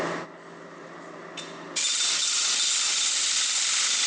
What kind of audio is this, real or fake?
real